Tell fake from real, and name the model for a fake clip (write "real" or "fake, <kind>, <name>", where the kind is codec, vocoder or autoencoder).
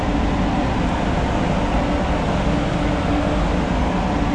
real